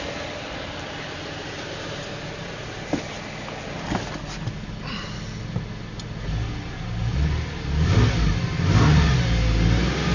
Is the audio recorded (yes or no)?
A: yes